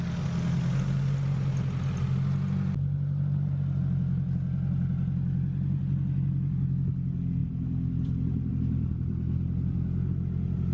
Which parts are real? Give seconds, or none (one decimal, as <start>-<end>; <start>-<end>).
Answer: 0.0-10.7